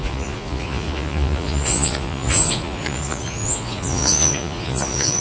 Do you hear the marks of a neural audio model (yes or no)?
yes